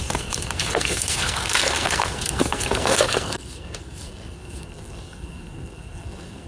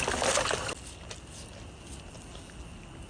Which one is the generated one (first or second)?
first